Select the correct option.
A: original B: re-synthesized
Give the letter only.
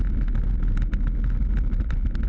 A